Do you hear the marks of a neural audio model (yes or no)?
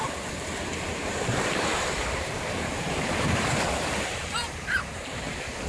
yes